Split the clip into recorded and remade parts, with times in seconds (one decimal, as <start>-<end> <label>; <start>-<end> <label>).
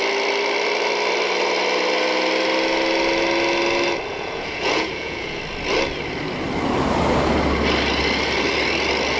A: 0.0-4.1 recorded; 4.1-5.4 remade; 5.4-9.2 recorded